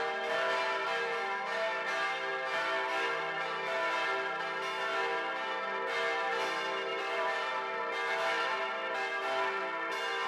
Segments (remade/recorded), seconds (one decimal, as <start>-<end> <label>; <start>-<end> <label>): 0.0-6.9 recorded; 6.9-7.5 remade; 7.5-10.3 recorded